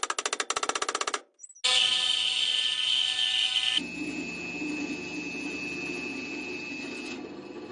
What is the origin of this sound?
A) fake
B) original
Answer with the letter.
B